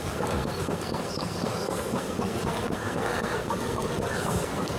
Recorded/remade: remade